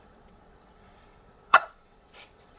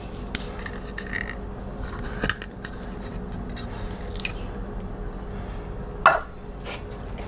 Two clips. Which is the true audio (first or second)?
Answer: second